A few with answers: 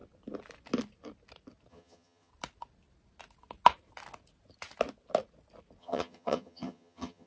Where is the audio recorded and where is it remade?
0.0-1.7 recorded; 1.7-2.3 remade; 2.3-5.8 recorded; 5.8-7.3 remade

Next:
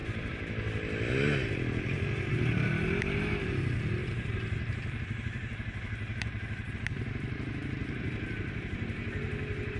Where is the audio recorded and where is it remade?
0.0-4.0 recorded; 4.0-6.7 remade; 6.7-7.8 recorded; 7.8-8.9 remade; 8.9-9.8 recorded

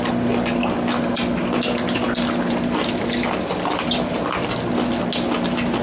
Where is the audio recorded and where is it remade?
0.0-5.8 recorded

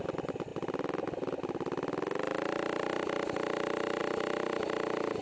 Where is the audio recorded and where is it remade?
0.0-5.2 recorded

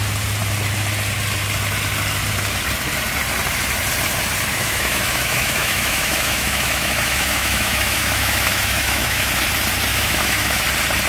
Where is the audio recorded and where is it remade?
0.0-4.5 recorded; 4.5-9.4 remade; 9.4-9.9 recorded; 9.9-10.6 remade; 10.6-11.1 recorded

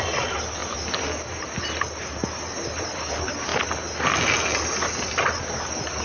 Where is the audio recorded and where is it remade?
0.0-6.0 recorded

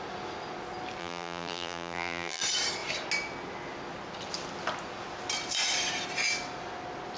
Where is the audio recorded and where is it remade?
0.0-1.0 recorded; 1.0-2.4 remade; 2.4-7.2 recorded